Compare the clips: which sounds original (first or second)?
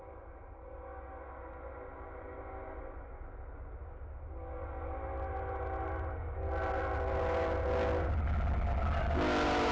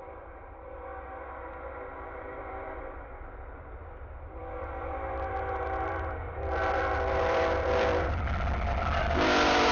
first